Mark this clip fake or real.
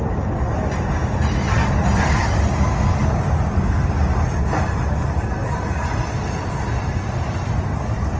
real